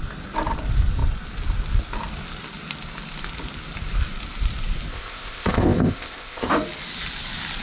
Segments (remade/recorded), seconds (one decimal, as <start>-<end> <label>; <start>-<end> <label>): 0.0-4.9 recorded; 4.9-6.5 remade; 6.5-7.6 recorded